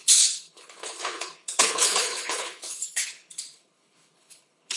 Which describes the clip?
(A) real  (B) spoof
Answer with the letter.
B